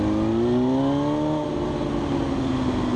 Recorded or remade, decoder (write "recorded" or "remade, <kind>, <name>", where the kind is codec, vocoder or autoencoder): recorded